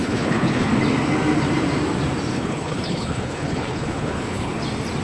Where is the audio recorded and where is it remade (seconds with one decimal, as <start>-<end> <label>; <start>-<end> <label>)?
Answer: 0.0-0.7 remade; 0.7-2.3 recorded; 2.3-4.6 remade; 4.6-5.0 recorded